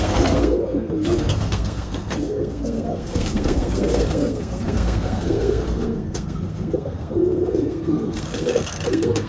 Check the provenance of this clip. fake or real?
fake